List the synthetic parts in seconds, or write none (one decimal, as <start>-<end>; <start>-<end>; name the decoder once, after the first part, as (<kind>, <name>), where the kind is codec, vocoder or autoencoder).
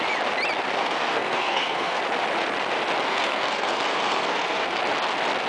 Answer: 0.8-2.0 (codec, SNAC); 3.1-4.8